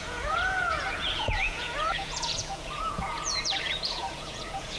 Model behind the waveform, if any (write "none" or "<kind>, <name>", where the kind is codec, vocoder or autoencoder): vocoder, Vocos